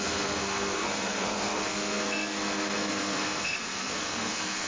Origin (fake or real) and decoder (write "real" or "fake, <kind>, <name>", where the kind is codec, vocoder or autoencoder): fake, codec, SNAC